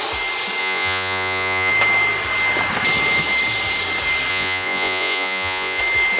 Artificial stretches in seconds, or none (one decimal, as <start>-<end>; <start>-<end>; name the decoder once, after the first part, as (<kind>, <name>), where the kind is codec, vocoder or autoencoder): 0.6-1.7 (vocoder, Vocos); 4.3-5.8